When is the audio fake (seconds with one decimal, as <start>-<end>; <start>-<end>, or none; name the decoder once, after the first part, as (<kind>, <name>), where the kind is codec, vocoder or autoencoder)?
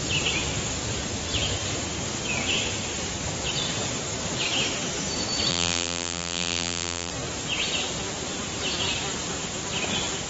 5.5-7.1 (vocoder, BigVGAN v2)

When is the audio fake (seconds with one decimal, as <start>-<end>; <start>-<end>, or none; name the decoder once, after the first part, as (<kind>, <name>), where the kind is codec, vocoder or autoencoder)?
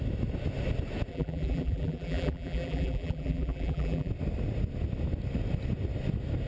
1.1-4.1 (vocoder, BigVGAN v2)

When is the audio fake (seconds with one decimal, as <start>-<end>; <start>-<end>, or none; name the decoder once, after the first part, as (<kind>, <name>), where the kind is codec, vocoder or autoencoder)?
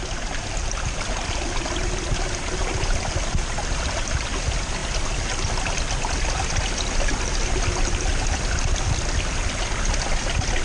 none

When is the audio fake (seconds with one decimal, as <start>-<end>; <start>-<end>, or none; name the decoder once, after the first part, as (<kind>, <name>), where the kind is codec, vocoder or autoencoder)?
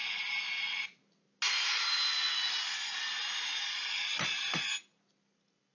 none